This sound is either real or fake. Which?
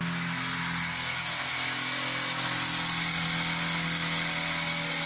real